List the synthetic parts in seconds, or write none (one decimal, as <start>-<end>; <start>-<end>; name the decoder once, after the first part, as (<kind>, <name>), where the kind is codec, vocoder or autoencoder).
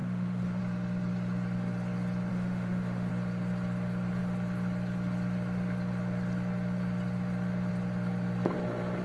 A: 0.0-0.6 (autoencoder, DAC-VAE); 2.3-3.1